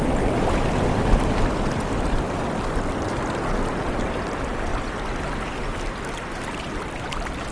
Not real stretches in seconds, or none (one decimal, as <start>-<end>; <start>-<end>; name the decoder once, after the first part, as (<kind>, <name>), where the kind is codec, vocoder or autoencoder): none